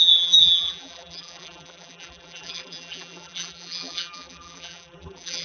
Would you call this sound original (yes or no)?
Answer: no